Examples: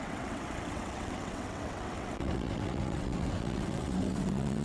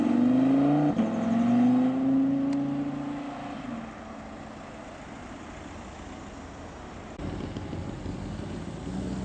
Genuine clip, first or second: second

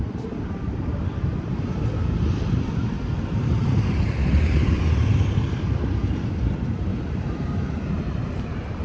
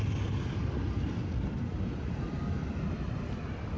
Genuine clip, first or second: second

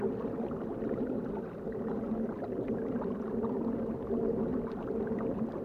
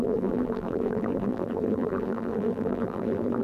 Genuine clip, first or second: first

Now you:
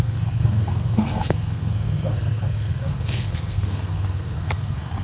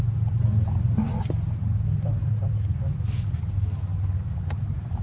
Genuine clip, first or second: second